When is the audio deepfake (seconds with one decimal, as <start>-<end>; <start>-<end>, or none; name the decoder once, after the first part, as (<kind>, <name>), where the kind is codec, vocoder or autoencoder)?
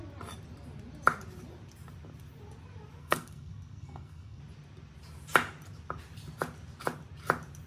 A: 3.0-4.4 (codec, SNAC)